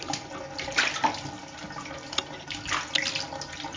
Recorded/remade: recorded